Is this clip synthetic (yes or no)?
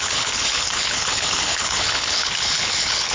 yes